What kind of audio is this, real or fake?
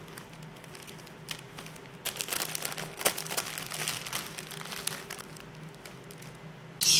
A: real